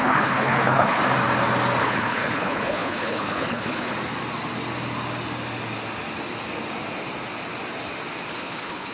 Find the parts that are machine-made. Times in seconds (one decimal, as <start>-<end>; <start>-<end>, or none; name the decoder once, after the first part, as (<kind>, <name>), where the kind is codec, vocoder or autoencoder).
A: 0.0-1.0 (codec, HILCodec); 1.8-3.9; 8.3-8.9